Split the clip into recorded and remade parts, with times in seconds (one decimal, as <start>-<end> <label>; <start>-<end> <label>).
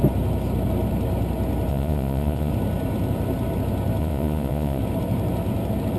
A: 0.0-1.7 recorded; 1.7-2.5 remade; 2.5-4.0 recorded; 4.0-4.8 remade; 4.8-6.0 recorded